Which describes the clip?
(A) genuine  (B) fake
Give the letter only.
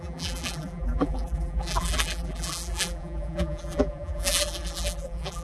B